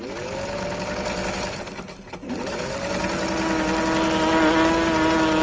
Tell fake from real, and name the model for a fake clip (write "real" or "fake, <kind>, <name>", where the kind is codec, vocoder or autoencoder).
real